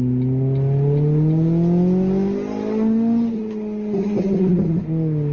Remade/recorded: recorded